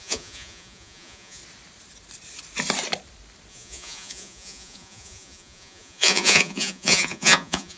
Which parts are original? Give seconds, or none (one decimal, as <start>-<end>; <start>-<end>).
1.4-3.5